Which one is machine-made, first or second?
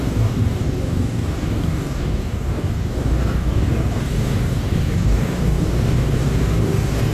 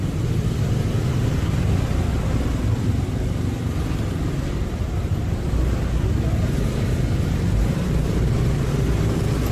first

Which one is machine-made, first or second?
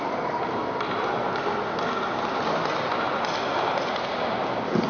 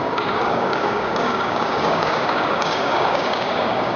second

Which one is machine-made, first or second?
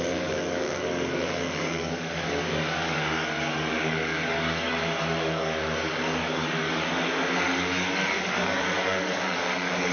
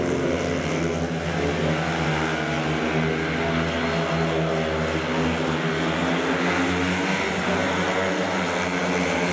first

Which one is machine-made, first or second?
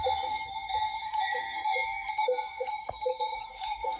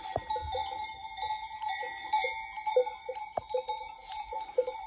first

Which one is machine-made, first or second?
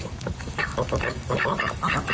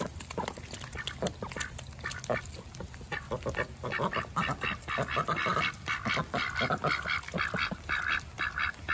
first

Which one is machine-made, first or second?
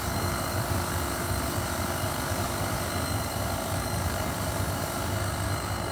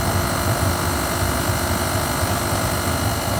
first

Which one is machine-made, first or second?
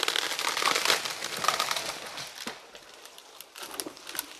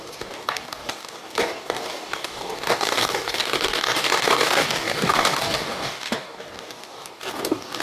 second